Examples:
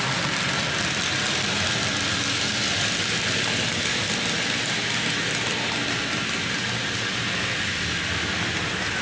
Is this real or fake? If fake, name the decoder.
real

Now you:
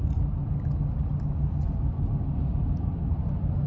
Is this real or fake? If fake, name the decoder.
real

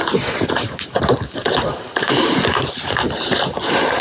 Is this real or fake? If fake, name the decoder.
fake, vocoder, BigVGAN v2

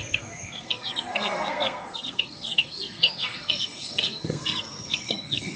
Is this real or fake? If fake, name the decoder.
fake, codec, SNAC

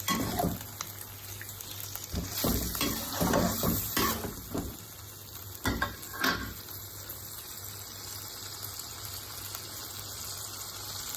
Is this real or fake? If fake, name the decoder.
real